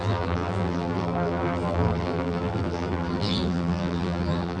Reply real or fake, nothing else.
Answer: fake